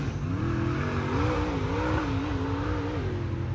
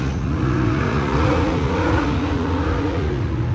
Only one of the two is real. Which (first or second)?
first